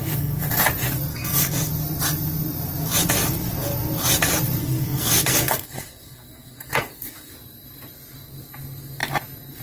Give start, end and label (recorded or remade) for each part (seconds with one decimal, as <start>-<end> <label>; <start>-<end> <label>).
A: 0.0-0.5 remade; 0.5-1.1 recorded; 1.1-1.7 remade; 1.7-4.6 recorded; 4.6-7.3 remade; 7.3-9.6 recorded